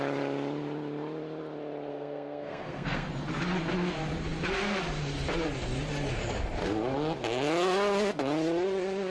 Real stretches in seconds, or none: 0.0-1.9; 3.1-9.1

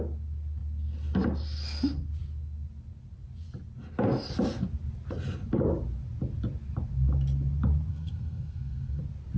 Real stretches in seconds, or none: 0.0-7.9; 9.0-9.4

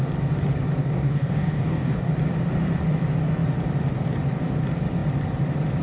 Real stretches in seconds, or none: 0.0-0.8; 2.1-5.8